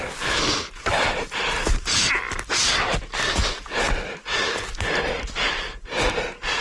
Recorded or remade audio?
recorded